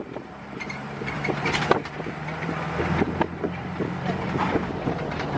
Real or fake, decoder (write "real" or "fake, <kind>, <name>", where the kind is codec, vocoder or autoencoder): fake, vocoder, BigVGAN v2